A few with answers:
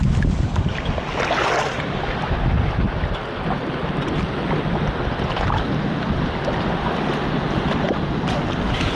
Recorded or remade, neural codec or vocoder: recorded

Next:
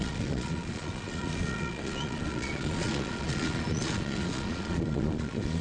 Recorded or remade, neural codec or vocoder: remade, vocoder, Vocos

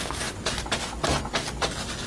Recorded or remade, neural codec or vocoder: recorded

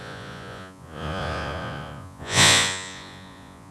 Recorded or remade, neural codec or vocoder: remade, vocoder, Vocos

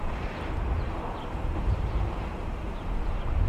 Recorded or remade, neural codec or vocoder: remade, vocoder, BigVGAN v2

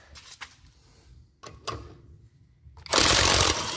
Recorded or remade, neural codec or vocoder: recorded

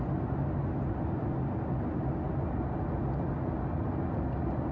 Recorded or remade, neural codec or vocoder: recorded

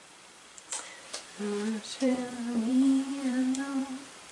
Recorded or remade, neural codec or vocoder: remade, vocoder, BigVGAN v2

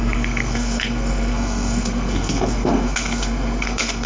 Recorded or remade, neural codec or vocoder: remade, codec, SNAC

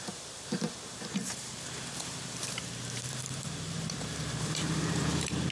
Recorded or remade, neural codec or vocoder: remade, vocoder, BigVGAN v2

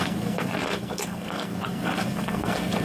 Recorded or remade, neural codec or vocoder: remade, codec, SNAC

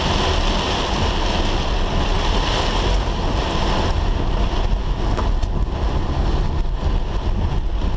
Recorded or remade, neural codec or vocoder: recorded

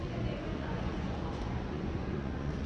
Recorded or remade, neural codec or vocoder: remade, vocoder, Vocos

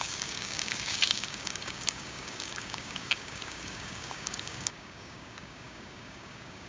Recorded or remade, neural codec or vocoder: remade, codec, DAC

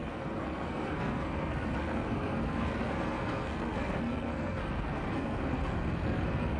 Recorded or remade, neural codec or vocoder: remade, codec, SNAC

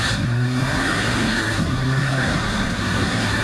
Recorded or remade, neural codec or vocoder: remade, codec, SNAC